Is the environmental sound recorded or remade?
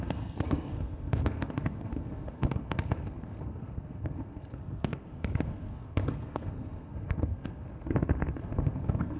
remade